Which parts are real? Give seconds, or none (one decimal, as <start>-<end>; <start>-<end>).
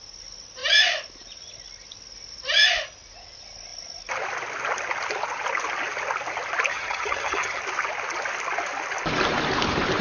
0.0-6.7; 7.6-10.0